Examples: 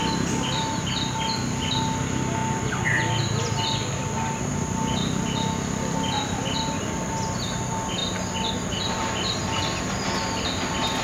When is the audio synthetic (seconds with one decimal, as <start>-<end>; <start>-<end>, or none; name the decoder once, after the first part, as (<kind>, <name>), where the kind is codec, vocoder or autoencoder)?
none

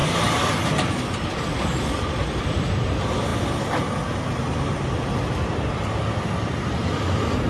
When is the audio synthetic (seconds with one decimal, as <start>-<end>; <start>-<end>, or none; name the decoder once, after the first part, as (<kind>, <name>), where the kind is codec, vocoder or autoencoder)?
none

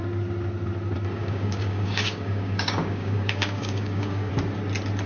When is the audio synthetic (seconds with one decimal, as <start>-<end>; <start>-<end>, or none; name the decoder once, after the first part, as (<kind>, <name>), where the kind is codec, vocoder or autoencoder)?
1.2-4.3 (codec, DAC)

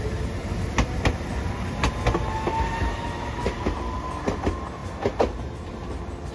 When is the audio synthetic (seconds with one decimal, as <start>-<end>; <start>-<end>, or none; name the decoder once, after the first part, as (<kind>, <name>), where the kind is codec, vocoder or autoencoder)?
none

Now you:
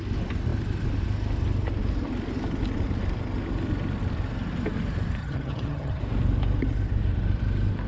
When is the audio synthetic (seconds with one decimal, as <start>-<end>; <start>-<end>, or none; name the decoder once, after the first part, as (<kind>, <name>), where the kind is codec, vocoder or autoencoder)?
5.2-6.0 (vocoder, HiFi-GAN)